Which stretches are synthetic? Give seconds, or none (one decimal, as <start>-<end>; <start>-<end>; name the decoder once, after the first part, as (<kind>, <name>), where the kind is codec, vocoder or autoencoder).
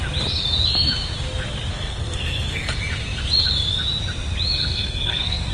1.7-2.7 (codec, SNAC); 4.6-5.5